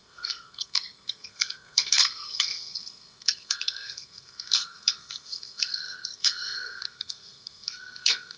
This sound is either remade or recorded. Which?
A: remade